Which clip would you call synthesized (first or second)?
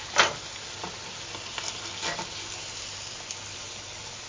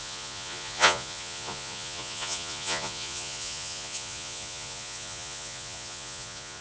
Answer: second